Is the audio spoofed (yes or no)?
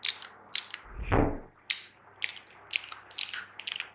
no